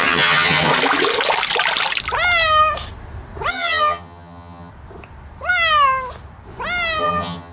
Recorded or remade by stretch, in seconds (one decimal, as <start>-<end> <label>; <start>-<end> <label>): 0.0-0.7 remade; 0.7-3.5 recorded; 3.5-4.7 remade; 4.7-7.0 recorded; 7.0-7.5 remade